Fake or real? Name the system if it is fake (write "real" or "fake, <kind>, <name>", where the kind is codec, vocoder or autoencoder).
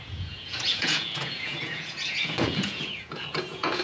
fake, vocoder, Vocos